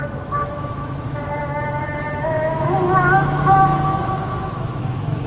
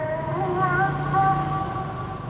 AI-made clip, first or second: first